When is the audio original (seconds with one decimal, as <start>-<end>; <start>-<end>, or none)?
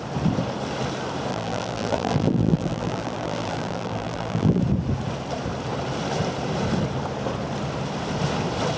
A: 0.0-1.3; 4.6-8.8